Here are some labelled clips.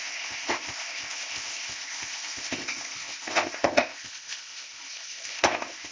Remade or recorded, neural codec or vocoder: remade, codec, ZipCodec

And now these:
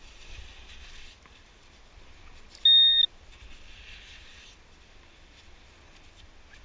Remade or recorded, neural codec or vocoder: recorded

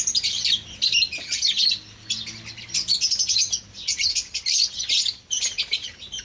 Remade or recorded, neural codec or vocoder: recorded